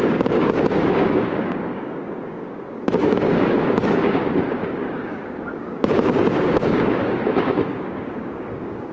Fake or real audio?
fake